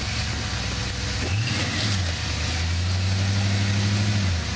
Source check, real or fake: real